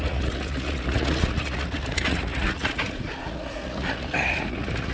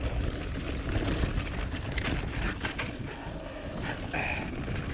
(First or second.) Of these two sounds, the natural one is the second